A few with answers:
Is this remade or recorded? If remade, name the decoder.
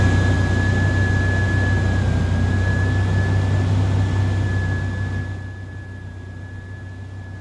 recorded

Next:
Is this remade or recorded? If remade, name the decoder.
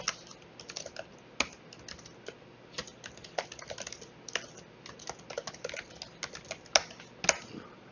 recorded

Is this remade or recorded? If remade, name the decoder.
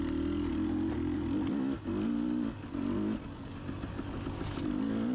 recorded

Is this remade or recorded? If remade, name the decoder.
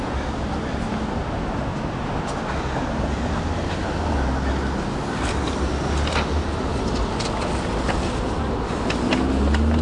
recorded